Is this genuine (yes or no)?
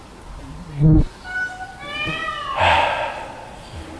yes